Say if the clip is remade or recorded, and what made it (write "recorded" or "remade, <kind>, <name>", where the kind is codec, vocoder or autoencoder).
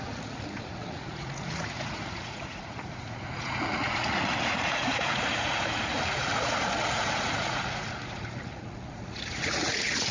remade, vocoder, Vocos